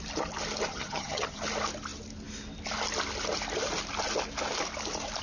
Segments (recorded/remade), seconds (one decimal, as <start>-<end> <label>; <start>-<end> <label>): 0.0-0.7 recorded; 0.7-1.4 remade; 1.4-5.2 recorded